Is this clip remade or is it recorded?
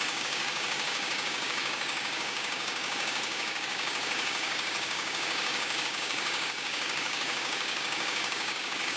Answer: remade